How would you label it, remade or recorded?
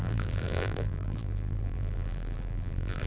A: remade